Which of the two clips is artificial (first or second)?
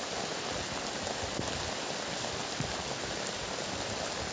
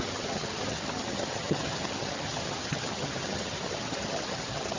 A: second